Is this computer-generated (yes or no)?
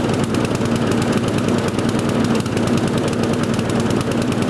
no